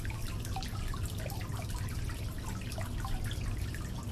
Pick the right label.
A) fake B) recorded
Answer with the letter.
B